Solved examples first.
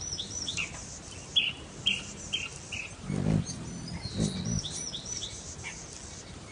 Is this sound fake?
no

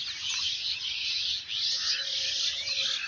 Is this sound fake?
no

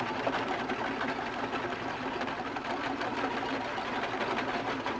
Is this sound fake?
no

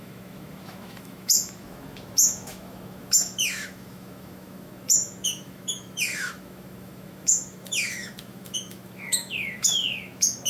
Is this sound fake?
yes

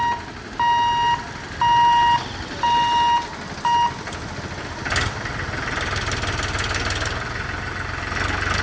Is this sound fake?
no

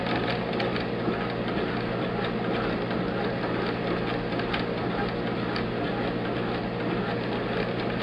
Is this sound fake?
no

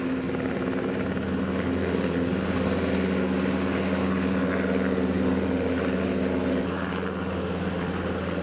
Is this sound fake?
no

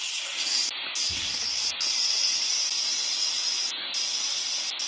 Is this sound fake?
no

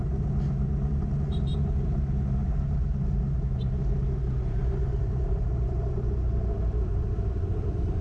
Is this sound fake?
yes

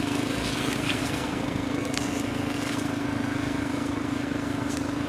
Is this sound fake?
yes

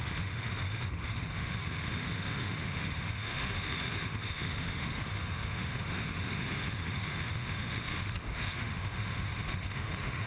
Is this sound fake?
yes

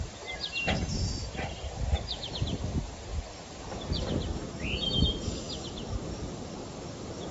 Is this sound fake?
no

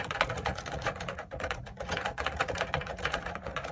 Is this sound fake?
yes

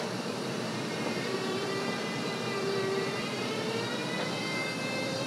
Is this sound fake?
yes